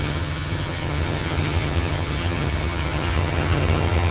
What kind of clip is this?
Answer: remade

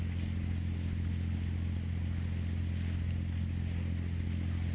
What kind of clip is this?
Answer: recorded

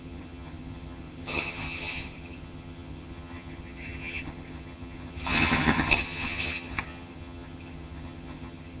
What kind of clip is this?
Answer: remade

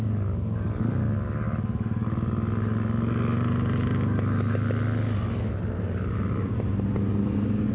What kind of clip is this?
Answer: recorded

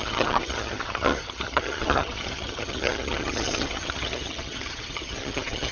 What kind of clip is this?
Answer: remade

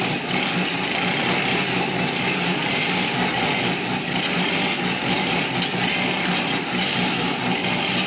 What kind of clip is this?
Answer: recorded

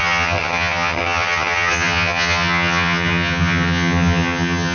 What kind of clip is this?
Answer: remade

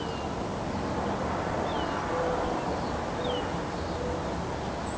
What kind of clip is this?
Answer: recorded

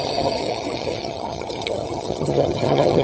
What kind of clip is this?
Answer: remade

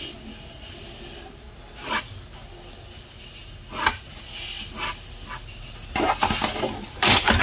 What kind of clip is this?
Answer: recorded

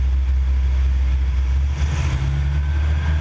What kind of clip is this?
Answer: recorded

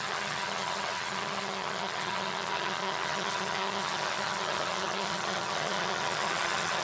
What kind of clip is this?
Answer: remade